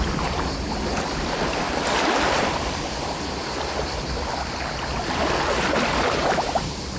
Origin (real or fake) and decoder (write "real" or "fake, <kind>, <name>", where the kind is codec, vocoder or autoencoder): real